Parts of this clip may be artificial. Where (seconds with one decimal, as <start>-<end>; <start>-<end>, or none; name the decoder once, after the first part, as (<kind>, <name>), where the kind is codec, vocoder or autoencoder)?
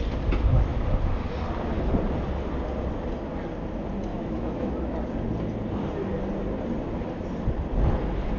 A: 4.1-4.7 (autoencoder, DAC-VAE)